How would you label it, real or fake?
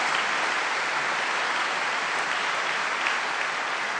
real